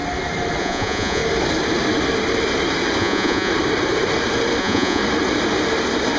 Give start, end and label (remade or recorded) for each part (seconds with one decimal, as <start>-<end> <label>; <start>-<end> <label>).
0.0-0.6 recorded; 0.6-1.2 remade; 1.2-3.0 recorded; 3.0-3.5 remade; 3.5-4.6 recorded; 4.6-5.0 remade; 5.0-6.2 recorded